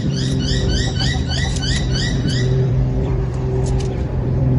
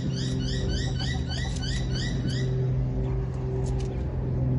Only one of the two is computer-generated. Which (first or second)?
first